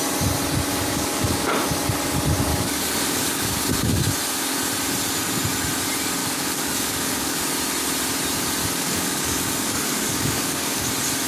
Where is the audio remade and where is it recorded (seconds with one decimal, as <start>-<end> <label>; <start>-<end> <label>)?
0.0-0.7 recorded; 0.7-1.5 remade; 1.5-2.5 recorded; 2.5-4.0 remade; 4.0-6.2 recorded; 6.2-7.4 remade; 7.4-8.6 recorded; 8.6-10.9 remade; 10.9-11.3 recorded